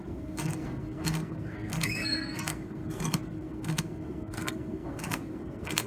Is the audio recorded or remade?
remade